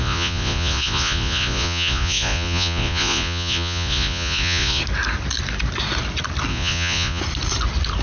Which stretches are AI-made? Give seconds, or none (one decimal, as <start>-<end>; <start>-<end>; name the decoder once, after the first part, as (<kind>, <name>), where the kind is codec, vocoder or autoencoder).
0.0-4.8 (vocoder, Vocos); 6.5-7.2